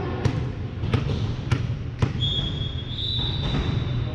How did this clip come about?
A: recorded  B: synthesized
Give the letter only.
A